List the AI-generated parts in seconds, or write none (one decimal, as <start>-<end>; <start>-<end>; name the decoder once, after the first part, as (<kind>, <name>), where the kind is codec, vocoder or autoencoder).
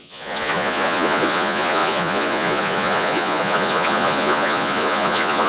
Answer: 0.0-5.5 (vocoder, Vocos)